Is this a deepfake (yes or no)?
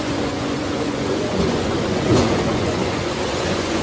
yes